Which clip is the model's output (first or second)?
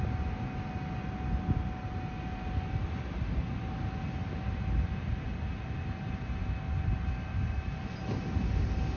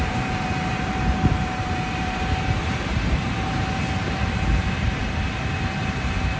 second